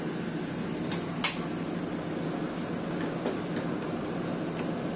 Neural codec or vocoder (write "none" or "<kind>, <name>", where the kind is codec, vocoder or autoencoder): none